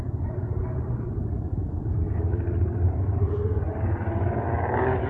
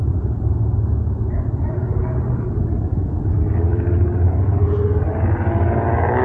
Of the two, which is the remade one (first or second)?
first